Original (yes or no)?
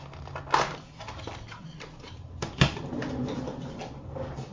yes